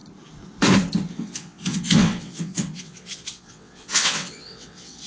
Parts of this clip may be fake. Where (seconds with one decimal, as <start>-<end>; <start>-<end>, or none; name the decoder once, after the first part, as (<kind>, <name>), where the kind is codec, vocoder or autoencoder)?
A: 1.1-5.1 (vocoder, WaveNeXt)